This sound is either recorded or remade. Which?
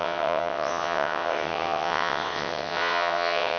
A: remade